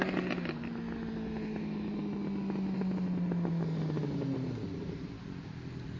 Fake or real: real